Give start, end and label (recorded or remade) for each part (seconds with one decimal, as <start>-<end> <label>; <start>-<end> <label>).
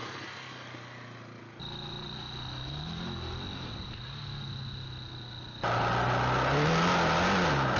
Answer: 0.0-7.8 recorded